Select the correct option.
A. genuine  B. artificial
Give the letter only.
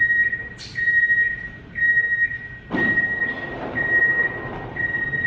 A